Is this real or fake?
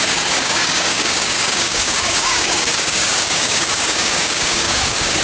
fake